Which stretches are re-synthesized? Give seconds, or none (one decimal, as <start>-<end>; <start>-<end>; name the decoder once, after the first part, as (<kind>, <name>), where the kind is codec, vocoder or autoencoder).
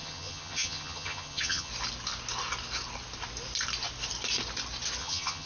0.0-1.7 (vocoder, HiFi-GAN); 5.0-5.5